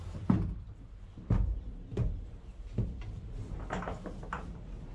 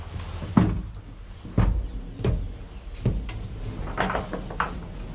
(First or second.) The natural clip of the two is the second